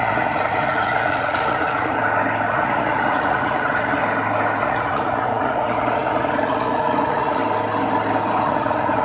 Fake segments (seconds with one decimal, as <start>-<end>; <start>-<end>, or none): 0.0-2.0; 2.5-4.0; 4.6-7.4; 8.4-9.0